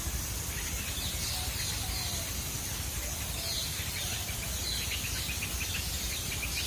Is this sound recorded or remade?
remade